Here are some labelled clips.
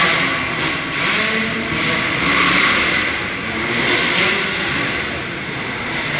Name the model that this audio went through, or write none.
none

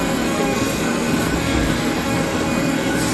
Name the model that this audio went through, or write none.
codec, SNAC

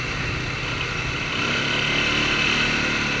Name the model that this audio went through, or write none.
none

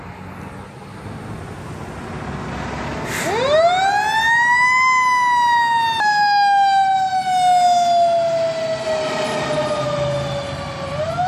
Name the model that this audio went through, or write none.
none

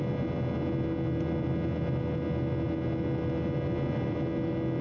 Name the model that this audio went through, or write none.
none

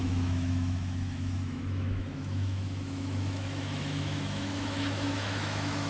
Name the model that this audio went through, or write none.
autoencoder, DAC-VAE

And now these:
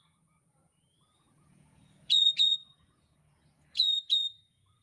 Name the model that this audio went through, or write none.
vocoder, Vocos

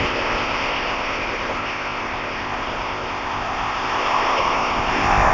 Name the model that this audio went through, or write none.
codec, ZipCodec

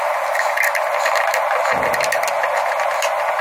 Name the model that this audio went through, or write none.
none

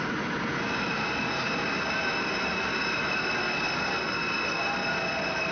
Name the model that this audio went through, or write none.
none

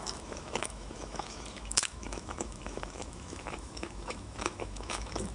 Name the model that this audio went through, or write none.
autoencoder, DAC-VAE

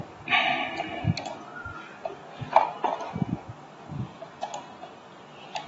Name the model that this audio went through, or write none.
none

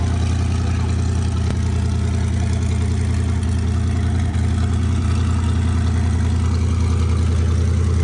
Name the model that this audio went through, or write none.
none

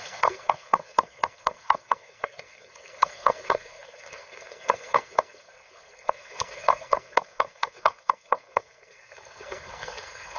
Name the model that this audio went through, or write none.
codec, SNAC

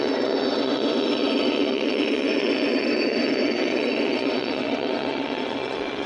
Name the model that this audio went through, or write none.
vocoder, WaveNeXt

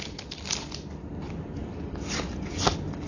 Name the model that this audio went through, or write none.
none